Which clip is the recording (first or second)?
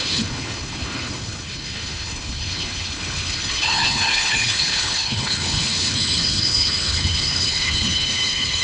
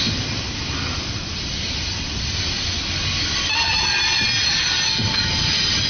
second